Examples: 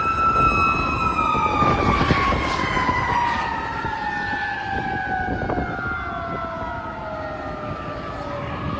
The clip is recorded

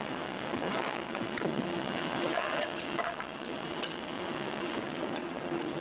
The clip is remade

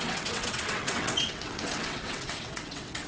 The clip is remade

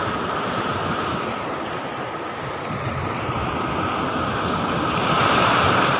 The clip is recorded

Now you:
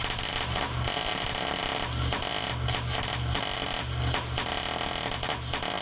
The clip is recorded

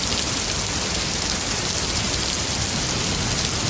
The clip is recorded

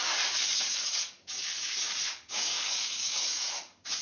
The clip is remade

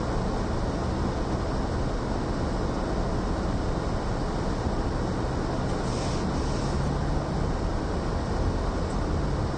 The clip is recorded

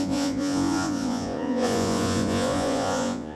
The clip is remade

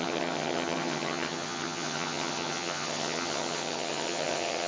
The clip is remade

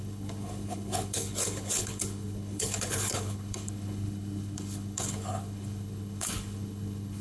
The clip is remade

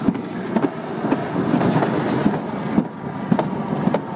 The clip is recorded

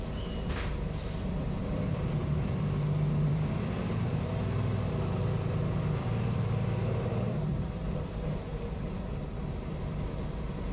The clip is remade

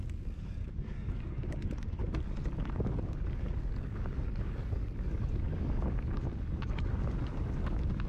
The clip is remade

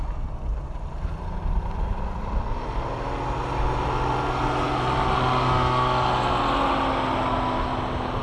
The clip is recorded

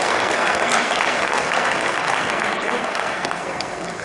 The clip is remade